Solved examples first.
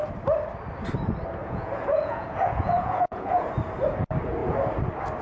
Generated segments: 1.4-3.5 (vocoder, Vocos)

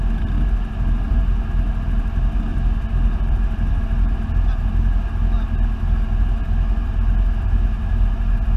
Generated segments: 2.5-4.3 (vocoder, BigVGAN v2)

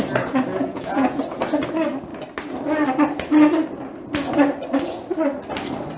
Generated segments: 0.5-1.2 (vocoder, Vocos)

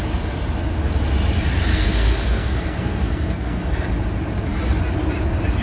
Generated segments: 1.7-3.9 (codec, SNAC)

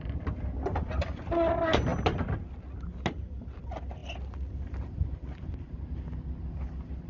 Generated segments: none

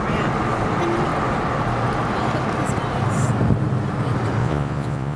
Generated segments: 4.4-5.2 (vocoder, Vocos)

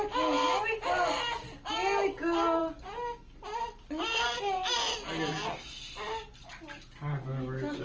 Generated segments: none